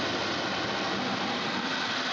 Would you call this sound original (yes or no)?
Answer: yes